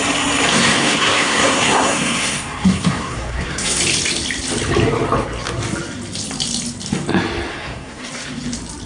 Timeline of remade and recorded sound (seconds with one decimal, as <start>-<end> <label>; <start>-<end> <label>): 0.0-0.5 recorded; 0.5-3.8 remade; 3.8-7.5 recorded; 7.5-8.1 remade; 8.1-8.9 recorded